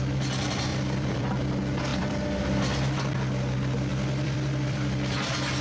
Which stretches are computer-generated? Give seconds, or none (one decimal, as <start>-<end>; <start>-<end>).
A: 0.7-1.5; 1.9-2.4; 3.9-5.6